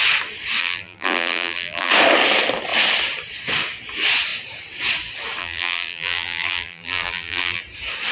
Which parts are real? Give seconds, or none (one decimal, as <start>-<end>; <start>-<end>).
0.0-0.6; 1.9-5.4; 7.6-8.1

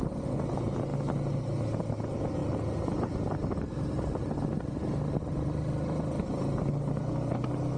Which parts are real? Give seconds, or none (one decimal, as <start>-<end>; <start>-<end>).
0.0-7.8

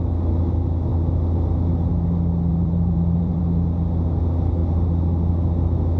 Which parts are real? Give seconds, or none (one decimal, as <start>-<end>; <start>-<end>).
0.0-2.5; 3.4-6.0

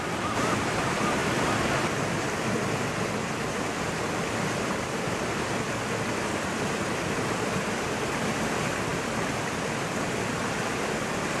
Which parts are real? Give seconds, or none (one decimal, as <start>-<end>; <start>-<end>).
1.2-4.4; 8.9-10.3

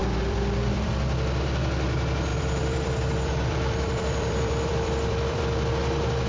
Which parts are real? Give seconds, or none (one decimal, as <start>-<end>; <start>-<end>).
0.9-2.3; 5.4-6.3

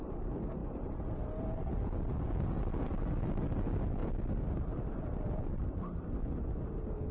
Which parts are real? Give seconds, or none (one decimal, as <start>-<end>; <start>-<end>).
0.0-7.1

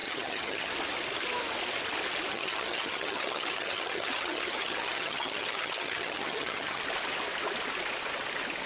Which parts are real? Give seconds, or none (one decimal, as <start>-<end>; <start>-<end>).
0.7-2.3; 6.8-8.7

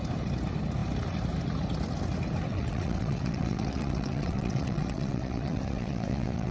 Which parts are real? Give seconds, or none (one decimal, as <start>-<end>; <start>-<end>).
0.0-2.5